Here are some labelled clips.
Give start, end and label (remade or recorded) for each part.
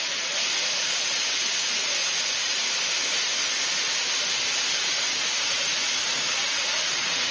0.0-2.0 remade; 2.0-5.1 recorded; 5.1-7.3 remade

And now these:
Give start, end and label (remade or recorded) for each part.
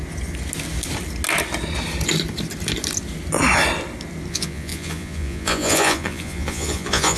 0.0-4.3 recorded; 4.3-7.2 remade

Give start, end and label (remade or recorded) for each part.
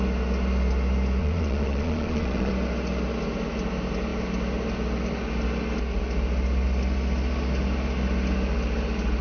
0.0-1.2 recorded; 1.2-2.5 remade; 2.5-9.2 recorded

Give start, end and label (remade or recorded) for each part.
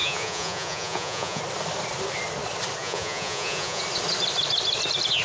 0.0-1.4 remade; 1.4-2.8 recorded; 2.8-3.8 remade; 3.8-5.2 recorded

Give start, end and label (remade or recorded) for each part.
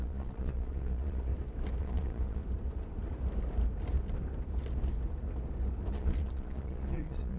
0.0-1.3 remade; 1.3-1.8 recorded; 1.8-2.4 remade; 2.4-5.9 recorded; 5.9-7.4 remade